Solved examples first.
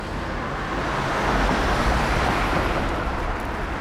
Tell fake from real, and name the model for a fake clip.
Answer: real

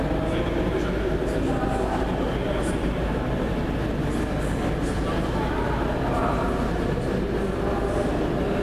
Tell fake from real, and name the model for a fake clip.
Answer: real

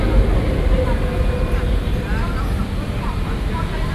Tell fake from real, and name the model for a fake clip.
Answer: real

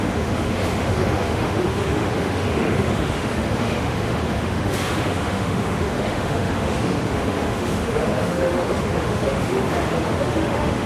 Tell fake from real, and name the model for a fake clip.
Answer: fake, autoencoder, DAC-VAE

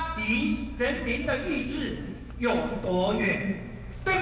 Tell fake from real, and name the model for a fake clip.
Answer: fake, autoencoder, DAC-VAE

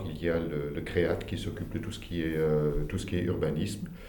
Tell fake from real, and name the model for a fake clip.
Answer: real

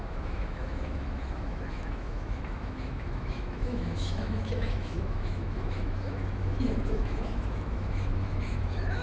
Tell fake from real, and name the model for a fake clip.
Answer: fake, autoencoder, DAC-VAE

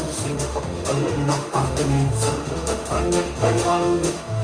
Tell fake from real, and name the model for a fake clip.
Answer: fake, autoencoder, DAC-VAE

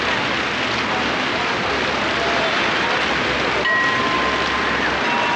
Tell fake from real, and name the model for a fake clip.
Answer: real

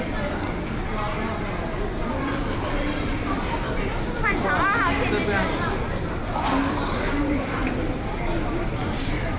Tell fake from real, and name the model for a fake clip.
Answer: real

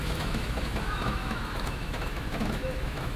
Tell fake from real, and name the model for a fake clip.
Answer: fake, autoencoder, DAC-VAE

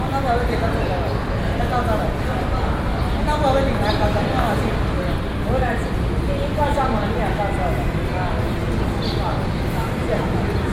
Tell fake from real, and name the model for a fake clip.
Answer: real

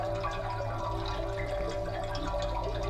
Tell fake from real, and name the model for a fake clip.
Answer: real